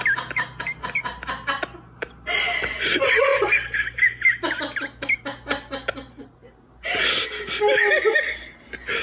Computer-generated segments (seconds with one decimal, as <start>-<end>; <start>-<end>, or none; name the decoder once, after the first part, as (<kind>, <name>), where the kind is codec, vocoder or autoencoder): 3.3-4.6 (vocoder, BigVGAN v2)